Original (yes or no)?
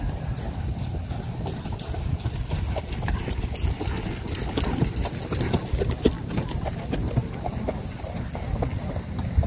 yes